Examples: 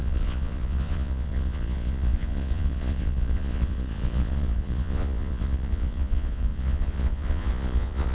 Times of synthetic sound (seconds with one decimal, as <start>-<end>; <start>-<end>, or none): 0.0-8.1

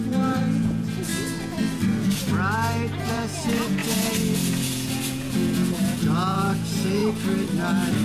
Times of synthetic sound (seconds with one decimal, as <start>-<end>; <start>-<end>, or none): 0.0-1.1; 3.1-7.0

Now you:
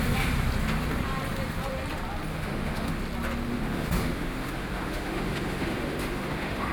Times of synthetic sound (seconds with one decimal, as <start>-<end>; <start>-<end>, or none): 2.3-3.0; 3.5-6.7